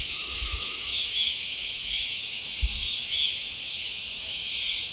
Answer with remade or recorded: remade